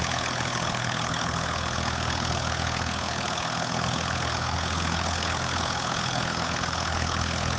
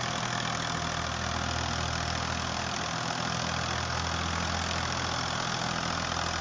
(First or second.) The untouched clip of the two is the second